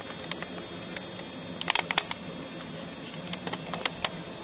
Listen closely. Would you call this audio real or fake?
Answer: real